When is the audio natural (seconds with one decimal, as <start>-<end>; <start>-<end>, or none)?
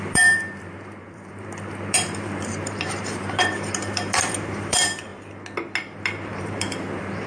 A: 5.1-6.3